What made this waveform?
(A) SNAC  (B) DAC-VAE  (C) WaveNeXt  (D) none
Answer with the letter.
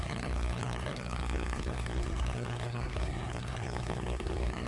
A